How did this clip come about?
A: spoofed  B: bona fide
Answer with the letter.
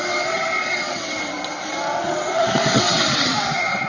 A